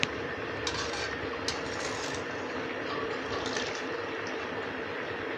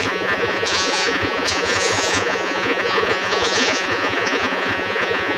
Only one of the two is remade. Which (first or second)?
second